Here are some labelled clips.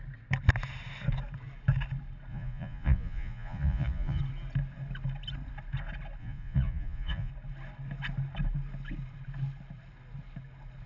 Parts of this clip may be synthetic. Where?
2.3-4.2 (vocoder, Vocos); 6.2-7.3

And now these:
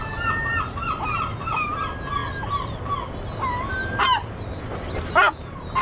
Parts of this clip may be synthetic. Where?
none

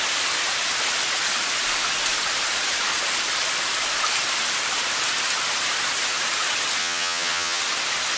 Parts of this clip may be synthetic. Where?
6.8-7.6 (vocoder, HiFi-GAN)

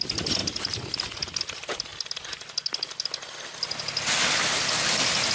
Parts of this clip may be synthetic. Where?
none

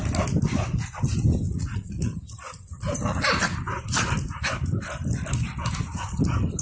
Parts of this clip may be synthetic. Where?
1.5-2.2 (vocoder, Vocos)

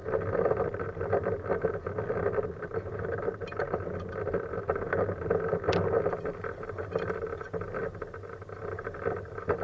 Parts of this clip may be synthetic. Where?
none

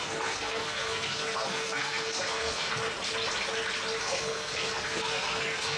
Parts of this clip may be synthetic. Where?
0.0-2.7 (codec, SNAC); 4.0-5.8